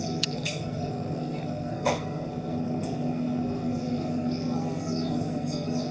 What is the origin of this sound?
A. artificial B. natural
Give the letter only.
A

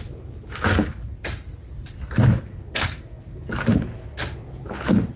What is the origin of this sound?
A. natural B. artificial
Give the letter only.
A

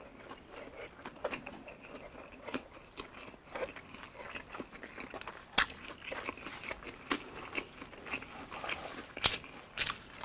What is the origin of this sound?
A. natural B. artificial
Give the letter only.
A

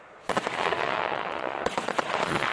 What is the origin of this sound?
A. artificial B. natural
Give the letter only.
A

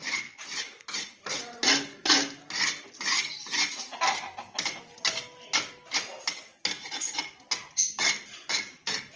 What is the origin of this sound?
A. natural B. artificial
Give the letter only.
A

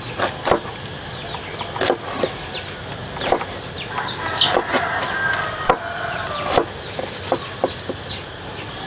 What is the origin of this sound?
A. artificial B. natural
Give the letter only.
B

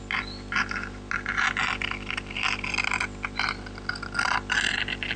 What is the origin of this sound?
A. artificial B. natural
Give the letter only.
B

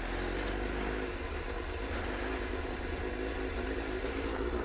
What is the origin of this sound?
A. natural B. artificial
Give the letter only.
A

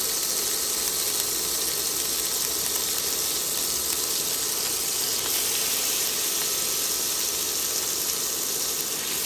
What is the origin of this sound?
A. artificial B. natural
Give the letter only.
B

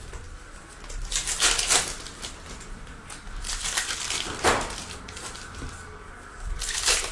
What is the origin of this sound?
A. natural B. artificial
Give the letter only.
A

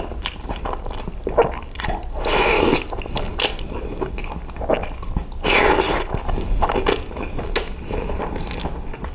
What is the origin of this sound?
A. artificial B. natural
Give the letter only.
B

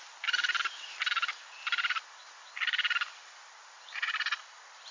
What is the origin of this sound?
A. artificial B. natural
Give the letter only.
B